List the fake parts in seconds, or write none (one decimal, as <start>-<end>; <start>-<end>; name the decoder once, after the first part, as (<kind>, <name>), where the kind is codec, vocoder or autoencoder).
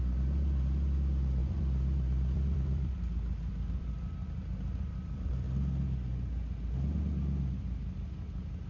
1.4-5.3 (vocoder, BigVGAN v2)